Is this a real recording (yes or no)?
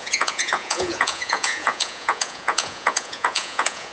no